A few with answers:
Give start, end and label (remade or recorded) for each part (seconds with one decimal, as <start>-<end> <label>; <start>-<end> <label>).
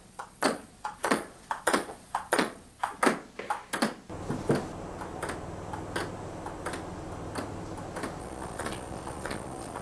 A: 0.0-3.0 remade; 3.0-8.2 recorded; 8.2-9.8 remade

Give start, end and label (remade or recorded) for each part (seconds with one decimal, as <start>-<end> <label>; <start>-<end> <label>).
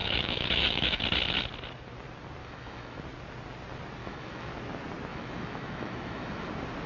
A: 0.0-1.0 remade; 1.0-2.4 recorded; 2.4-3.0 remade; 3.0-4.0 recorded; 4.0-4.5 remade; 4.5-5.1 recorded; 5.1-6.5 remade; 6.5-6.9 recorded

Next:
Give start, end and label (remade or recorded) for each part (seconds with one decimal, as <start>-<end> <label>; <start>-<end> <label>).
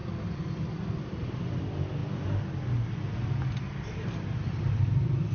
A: 0.0-5.3 recorded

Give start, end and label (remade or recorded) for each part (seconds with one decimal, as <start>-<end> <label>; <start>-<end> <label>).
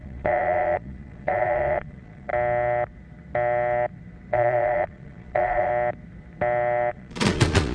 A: 0.0-2.3 remade; 2.3-4.3 recorded; 4.3-5.7 remade; 5.7-6.9 recorded; 6.9-7.7 remade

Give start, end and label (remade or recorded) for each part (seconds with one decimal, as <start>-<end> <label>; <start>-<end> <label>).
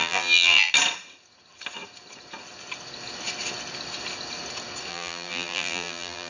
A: 0.0-0.7 remade; 0.7-4.9 recorded; 4.9-6.3 remade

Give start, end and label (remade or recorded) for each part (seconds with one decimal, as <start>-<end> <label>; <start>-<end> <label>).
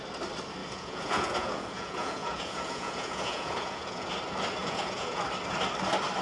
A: 0.0-0.6 recorded; 0.6-4.1 remade; 4.1-4.6 recorded; 4.6-5.2 remade; 5.2-6.2 recorded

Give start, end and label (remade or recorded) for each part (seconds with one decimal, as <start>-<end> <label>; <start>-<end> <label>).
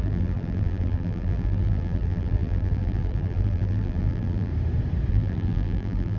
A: 0.0-4.5 remade; 4.5-5.1 recorded; 5.1-6.2 remade